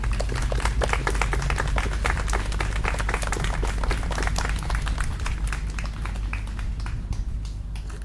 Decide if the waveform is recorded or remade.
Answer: recorded